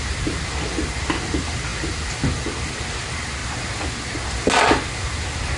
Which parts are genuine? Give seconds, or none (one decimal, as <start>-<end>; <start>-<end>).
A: 0.0-5.6